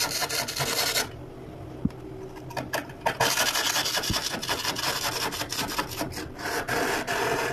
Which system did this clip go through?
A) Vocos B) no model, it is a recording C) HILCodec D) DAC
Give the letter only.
B